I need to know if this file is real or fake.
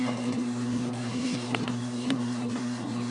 fake